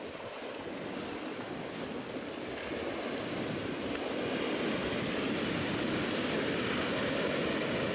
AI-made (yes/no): no